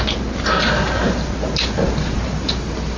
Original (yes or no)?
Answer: yes